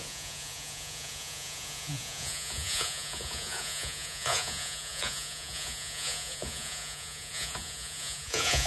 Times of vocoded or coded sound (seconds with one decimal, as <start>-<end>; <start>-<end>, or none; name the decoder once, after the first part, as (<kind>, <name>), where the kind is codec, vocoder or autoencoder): 0.0-8.7 (vocoder, Vocos)